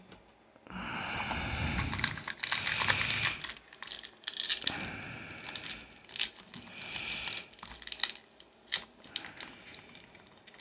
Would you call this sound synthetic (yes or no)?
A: no